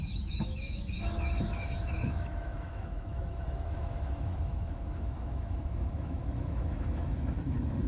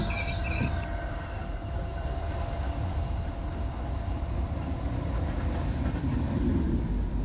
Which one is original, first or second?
second